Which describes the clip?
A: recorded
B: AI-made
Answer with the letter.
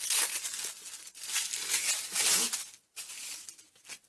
A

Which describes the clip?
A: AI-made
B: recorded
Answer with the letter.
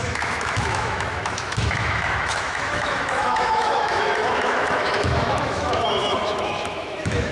A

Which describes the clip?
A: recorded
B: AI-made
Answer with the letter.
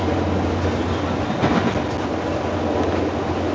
A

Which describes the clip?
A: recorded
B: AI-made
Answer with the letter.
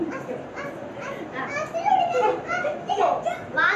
A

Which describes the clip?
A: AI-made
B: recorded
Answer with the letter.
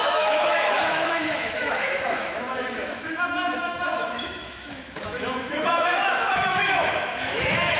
A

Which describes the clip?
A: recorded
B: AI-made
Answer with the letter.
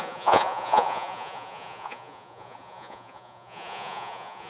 B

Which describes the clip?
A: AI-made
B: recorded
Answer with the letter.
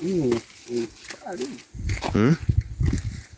B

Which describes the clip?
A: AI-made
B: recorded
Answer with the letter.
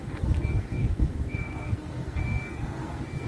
A